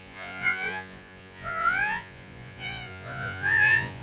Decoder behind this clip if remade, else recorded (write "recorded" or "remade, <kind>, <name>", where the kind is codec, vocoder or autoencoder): remade, vocoder, Vocos